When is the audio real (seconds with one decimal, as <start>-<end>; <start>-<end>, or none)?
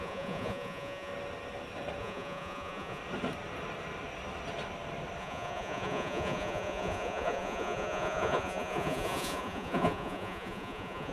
1.1-2.0; 3.0-5.2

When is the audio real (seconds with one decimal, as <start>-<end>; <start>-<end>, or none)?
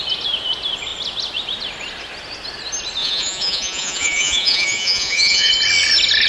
0.0-3.0; 5.5-6.3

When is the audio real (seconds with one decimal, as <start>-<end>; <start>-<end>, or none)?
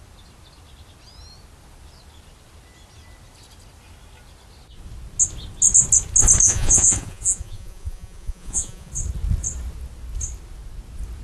0.0-6.4; 8.9-11.2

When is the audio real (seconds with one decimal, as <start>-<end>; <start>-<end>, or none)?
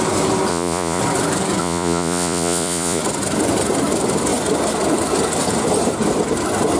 0.0-0.5; 1.0-1.6; 3.0-6.8